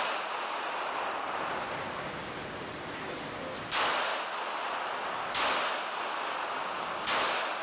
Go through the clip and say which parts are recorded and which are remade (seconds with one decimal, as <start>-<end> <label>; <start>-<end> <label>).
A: 0.0-7.6 recorded